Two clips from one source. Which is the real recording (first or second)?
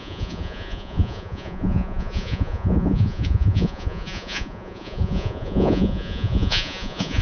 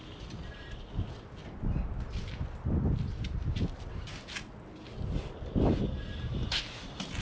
second